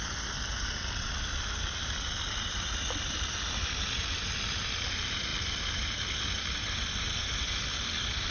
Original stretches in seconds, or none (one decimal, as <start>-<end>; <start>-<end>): none